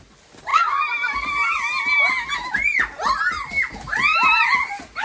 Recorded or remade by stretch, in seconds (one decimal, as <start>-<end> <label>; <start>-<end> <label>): 0.0-5.0 recorded